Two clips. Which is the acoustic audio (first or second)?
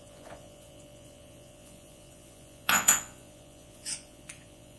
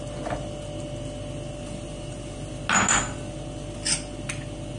second